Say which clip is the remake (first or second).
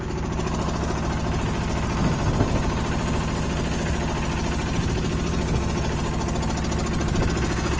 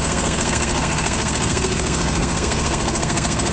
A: second